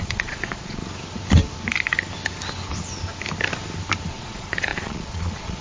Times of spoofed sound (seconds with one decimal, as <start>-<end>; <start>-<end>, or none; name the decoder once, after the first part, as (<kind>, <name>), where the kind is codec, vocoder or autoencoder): 0.0-0.8 (vocoder, Vocos); 4.1-5.6